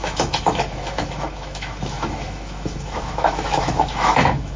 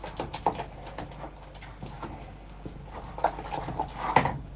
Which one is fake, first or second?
first